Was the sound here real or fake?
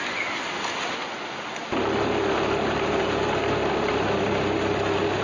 real